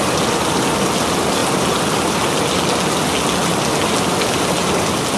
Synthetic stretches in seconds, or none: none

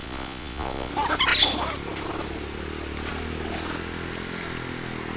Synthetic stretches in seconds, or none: 0.0-0.9

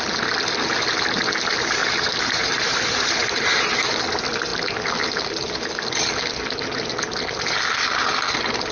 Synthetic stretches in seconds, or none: 1.8-4.0

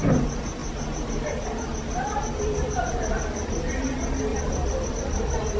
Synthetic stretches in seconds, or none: 0.6-3.7; 4.3-4.9

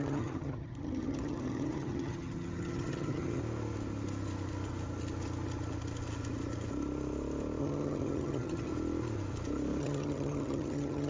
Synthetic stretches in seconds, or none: 0.0-3.4; 7.6-8.7; 9.8-11.1

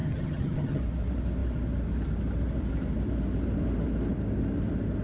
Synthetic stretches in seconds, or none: 0.0-0.8